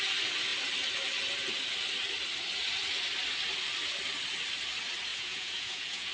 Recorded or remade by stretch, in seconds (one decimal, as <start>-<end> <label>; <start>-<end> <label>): 0.0-5.1 recorded; 5.1-6.1 remade